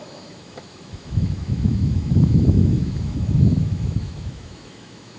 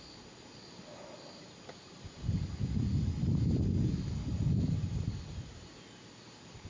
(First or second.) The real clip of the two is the second